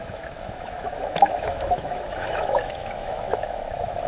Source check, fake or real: fake